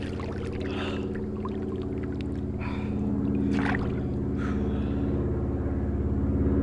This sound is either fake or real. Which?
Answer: real